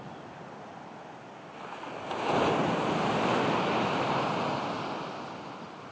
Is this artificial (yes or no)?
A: no